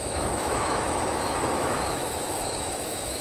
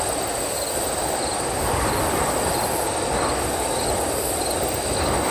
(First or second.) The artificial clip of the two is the first